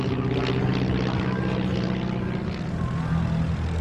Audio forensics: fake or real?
real